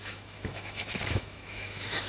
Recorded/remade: remade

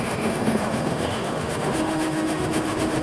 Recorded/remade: remade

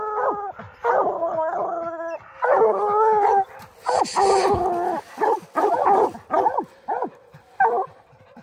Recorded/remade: recorded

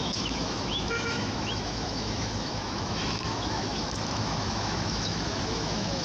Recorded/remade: remade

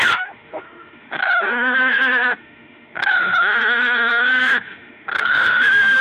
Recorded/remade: remade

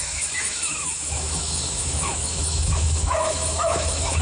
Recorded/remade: remade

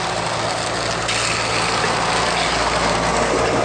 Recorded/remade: recorded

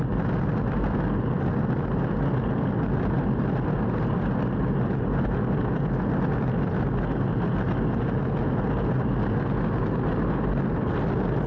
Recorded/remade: recorded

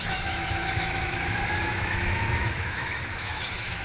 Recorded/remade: remade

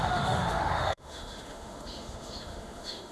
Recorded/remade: remade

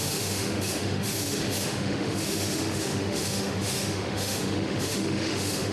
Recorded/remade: remade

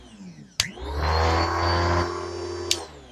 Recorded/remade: recorded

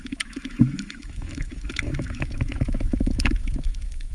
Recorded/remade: remade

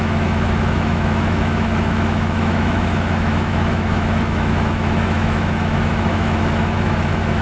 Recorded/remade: remade